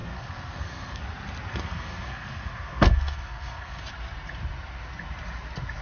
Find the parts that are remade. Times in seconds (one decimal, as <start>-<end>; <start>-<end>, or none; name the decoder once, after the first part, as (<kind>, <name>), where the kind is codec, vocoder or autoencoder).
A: 0.0-1.0 (codec, SNAC); 1.5-3.8